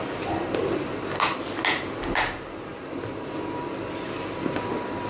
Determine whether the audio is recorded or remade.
recorded